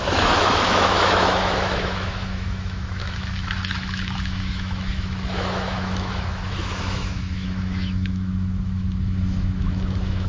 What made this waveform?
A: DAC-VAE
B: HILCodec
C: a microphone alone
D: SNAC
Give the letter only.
A